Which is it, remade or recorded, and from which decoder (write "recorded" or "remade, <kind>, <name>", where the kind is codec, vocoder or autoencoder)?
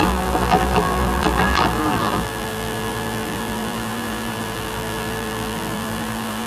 remade, vocoder, BigVGAN v2